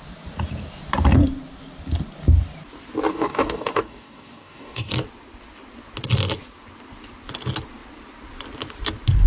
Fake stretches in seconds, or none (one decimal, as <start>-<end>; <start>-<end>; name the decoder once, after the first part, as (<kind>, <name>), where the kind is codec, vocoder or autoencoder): 3.1-4.9 (codec, DAC)